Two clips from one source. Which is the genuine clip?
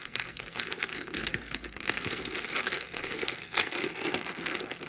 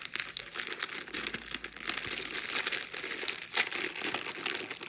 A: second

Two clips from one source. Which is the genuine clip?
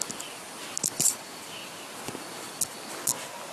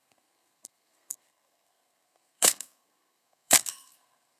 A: first